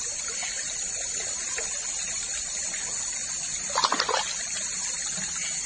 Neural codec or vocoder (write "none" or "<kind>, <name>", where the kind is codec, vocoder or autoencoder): none